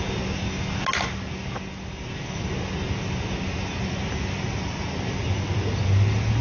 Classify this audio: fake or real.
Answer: real